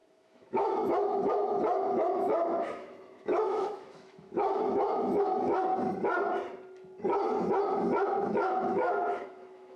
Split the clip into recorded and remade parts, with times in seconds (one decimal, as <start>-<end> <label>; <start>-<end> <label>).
0.0-5.7 remade; 5.7-8.3 recorded; 8.3-9.8 remade